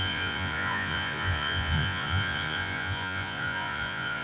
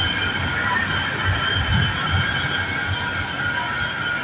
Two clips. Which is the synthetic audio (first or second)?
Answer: first